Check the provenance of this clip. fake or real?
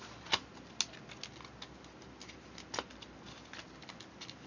real